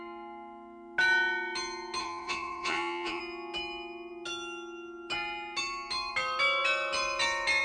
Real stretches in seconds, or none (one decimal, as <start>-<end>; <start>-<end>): 0.0-2.0; 3.2-7.6